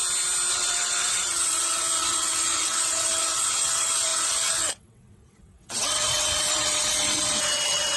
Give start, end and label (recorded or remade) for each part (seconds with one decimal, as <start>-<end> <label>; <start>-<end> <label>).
0.0-0.5 recorded; 0.5-8.0 remade

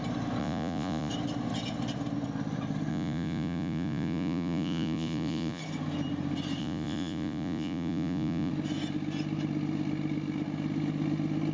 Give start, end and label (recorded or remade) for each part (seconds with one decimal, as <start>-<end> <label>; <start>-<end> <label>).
0.0-0.4 recorded; 0.4-1.1 remade; 1.1-2.9 recorded; 2.9-5.6 remade; 5.6-6.6 recorded; 6.6-8.5 remade; 8.5-11.5 recorded

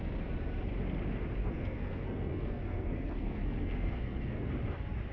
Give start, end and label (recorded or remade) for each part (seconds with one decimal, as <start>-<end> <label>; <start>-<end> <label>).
0.0-1.4 recorded; 1.4-4.5 remade; 4.5-5.1 recorded

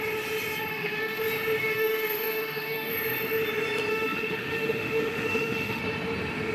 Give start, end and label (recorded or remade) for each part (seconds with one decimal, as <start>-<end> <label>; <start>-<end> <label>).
0.0-0.7 recorded; 0.7-1.2 remade; 1.2-1.6 recorded; 1.6-2.9 remade; 2.9-3.9 recorded; 3.9-5.8 remade; 5.8-6.5 recorded

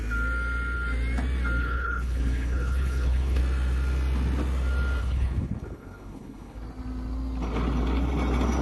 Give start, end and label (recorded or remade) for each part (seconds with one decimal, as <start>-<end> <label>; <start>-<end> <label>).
0.0-1.6 recorded; 1.6-3.4 remade; 3.4-5.0 recorded; 5.0-6.6 remade; 6.6-8.6 recorded